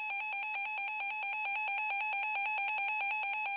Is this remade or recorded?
recorded